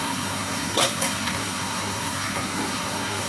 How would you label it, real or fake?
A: fake